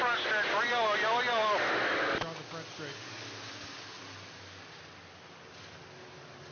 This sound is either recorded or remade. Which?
recorded